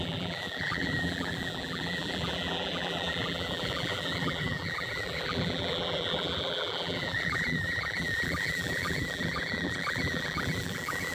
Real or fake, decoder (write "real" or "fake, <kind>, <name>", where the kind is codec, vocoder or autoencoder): fake, vocoder, BigVGAN v2